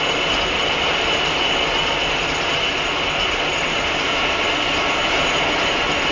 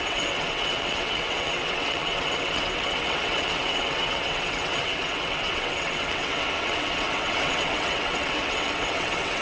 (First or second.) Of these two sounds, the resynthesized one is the second